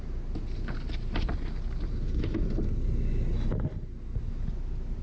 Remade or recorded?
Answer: recorded